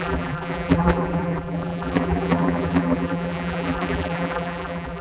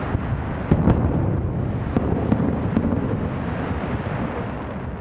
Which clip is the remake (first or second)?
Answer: first